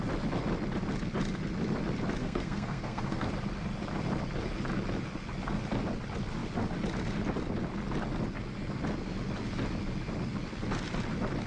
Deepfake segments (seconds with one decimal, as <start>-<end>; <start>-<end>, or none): 2.2-3.3